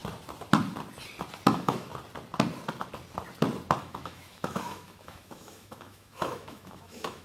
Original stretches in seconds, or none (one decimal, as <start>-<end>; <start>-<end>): 0.0-1.5; 1.9-3.8